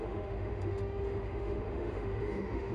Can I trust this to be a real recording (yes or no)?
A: no